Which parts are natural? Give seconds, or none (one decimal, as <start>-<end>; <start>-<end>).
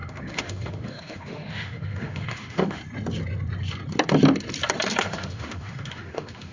2.8-5.0